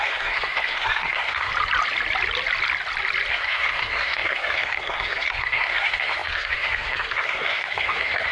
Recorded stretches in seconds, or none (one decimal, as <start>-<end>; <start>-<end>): 1.5-3.3